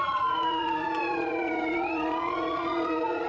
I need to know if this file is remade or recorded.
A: remade